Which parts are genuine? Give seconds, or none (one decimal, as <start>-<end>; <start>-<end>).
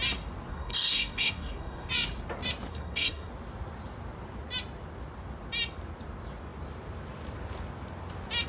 0.0-0.5; 1.9-2.7; 3.3-8.5